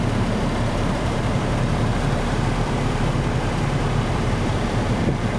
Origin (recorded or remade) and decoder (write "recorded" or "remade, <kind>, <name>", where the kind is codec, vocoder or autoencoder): remade, vocoder, BigVGAN v2